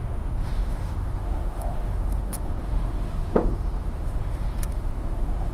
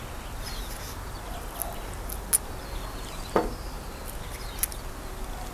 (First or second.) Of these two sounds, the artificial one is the first